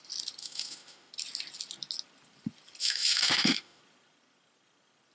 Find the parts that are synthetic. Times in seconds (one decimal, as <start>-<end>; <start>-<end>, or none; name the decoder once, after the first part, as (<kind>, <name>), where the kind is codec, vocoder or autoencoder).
0.4-1.1 (autoencoder, DAC-VAE); 2.8-3.8